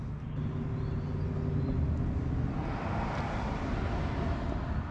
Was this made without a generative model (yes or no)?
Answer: yes